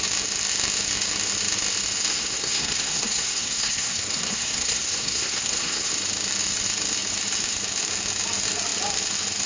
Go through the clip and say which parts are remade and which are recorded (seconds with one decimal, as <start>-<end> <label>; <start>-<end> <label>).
0.0-2.1 recorded; 2.1-5.9 remade; 5.9-9.5 recorded